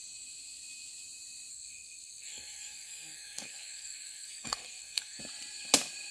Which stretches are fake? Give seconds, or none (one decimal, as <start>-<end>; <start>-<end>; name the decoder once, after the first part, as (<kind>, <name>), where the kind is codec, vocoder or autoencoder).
1.5-5.2 (codec, SNAC)